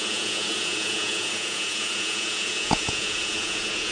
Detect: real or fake fake